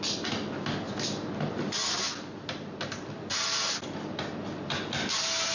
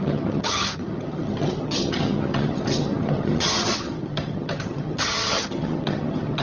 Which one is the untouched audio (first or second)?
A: first